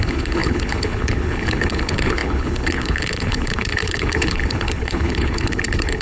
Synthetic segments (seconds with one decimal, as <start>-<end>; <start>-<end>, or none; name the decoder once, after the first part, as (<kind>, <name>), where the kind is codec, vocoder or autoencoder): 0.0-6.0 (codec, HILCodec)

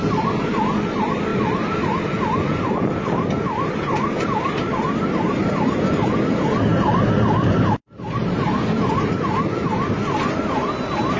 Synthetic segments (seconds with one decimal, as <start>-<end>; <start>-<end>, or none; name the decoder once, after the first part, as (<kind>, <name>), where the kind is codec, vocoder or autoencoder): 0.0-11.2 (vocoder, BigVGAN v2)

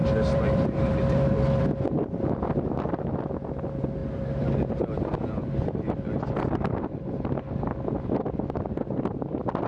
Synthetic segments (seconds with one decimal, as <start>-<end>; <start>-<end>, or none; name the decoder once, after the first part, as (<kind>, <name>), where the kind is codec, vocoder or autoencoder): 0.0-1.6 (vocoder, BigVGAN v2); 4.0-8.3

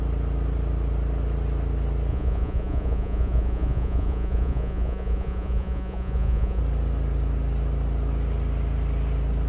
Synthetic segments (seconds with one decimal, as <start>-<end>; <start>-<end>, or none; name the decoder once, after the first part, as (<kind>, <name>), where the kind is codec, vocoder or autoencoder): 2.1-6.6 (vocoder, Vocos)